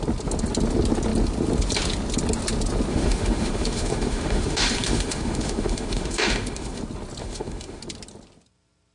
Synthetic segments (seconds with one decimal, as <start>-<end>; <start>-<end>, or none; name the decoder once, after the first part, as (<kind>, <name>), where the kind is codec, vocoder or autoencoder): 2.9-6.8 (autoencoder, DAC-VAE); 7.2-7.8